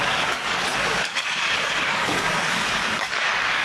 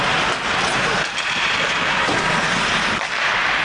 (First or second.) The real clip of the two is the second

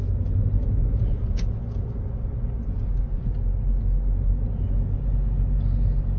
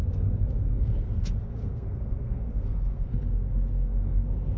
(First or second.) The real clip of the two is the first